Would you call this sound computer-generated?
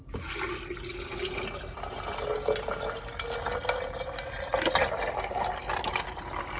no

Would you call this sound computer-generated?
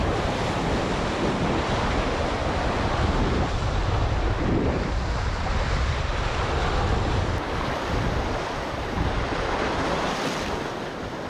no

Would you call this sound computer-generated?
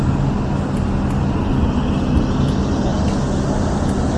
no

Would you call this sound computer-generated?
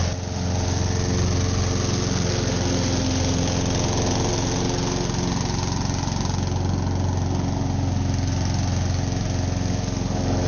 no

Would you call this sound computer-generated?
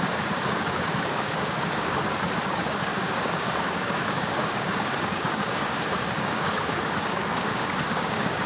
yes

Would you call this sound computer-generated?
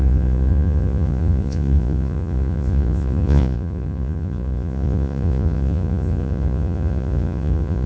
yes